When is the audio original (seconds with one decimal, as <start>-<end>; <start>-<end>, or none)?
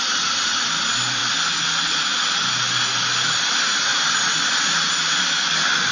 0.0-5.9